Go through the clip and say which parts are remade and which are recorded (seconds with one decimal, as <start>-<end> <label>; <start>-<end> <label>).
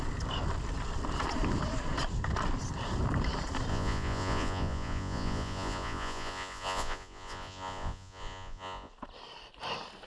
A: 0.0-3.7 recorded; 3.7-8.9 remade; 8.9-10.1 recorded